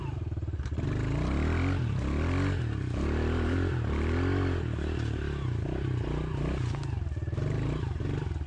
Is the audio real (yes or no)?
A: yes